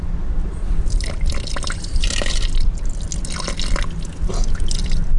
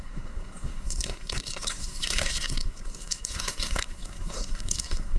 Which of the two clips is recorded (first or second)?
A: first